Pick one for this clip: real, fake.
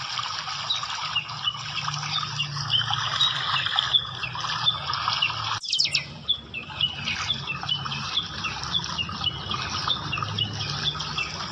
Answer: real